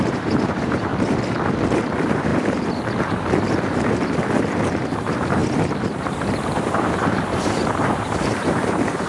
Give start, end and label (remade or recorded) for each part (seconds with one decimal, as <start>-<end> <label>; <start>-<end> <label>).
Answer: 0.0-0.9 remade; 0.9-1.7 recorded; 1.7-2.3 remade; 2.3-4.4 recorded; 4.4-9.1 remade